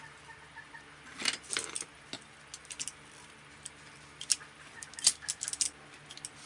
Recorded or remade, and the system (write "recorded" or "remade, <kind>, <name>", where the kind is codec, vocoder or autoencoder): recorded